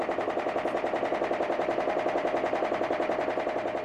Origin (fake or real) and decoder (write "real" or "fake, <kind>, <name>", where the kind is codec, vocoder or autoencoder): fake, vocoder, BigVGAN v2